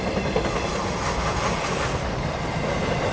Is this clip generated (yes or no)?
no